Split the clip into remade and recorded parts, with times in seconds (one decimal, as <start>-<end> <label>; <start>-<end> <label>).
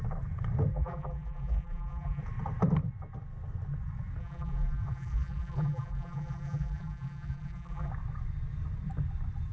0.0-0.7 recorded; 0.7-2.2 remade; 2.2-4.2 recorded; 4.2-7.9 remade; 7.9-9.5 recorded